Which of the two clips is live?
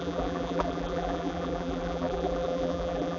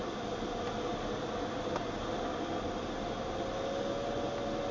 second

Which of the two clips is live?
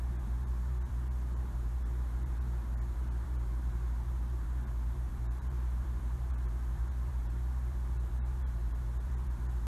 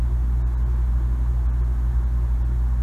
second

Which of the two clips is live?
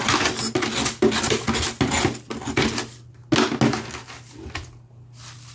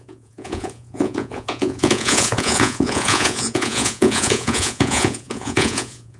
first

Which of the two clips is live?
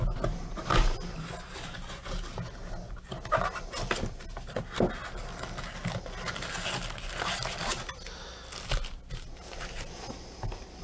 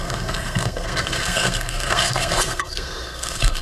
first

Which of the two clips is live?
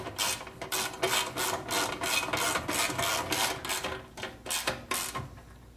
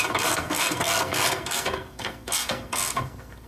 first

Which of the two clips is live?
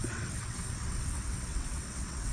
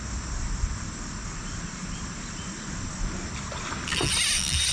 second